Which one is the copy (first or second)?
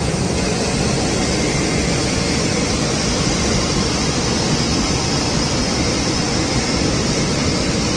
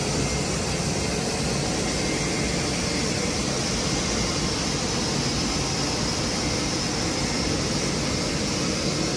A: first